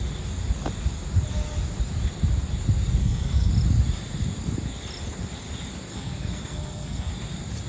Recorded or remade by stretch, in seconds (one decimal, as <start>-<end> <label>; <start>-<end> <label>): 0.0-3.0 recorded; 3.0-3.5 remade; 3.5-5.9 recorded; 5.9-7.1 remade; 7.1-7.7 recorded